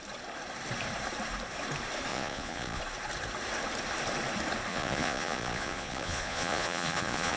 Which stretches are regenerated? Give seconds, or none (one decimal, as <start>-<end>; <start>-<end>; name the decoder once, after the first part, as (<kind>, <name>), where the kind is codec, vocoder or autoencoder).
2.1-2.8 (vocoder, Vocos); 4.7-7.4